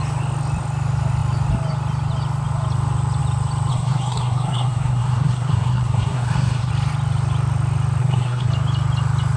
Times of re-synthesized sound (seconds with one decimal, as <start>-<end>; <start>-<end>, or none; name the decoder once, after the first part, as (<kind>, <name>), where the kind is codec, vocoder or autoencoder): 3.7-6.7 (codec, SNAC); 8.0-8.5

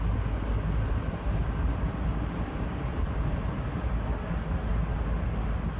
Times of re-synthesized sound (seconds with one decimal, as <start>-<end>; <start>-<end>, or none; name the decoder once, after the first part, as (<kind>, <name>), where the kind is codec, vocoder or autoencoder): 1.4-3.9 (vocoder, BigVGAN v2)

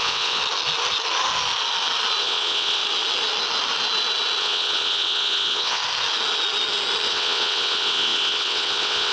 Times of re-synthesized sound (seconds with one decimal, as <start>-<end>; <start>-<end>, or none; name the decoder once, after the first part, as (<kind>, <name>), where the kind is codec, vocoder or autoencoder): 0.0-0.4 (vocoder, WaveNeXt); 2.2-2.8; 4.4-5.8; 7.1-9.1

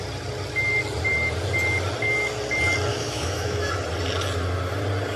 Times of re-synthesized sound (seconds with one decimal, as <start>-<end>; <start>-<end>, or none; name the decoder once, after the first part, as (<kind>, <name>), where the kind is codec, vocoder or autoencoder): 2.9-3.7 (autoencoder, DAC-VAE)

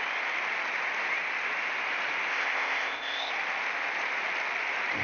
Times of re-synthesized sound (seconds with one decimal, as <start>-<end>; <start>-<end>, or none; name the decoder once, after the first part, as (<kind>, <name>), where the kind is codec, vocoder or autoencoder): 2.3-3.3 (codec, ZipCodec)

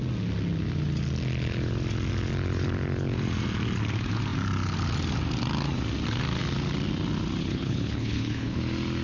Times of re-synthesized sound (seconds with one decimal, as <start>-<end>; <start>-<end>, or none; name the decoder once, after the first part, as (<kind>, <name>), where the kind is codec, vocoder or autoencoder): 7.4-8.6 (codec, HILCodec)